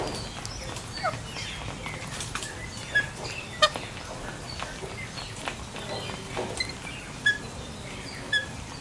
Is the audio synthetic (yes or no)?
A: no